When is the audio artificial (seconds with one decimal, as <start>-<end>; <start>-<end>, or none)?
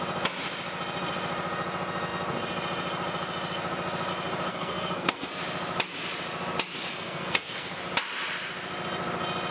4.5-5.3; 6.9-7.8